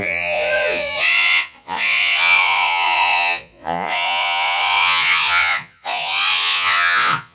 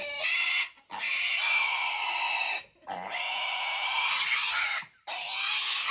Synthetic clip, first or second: first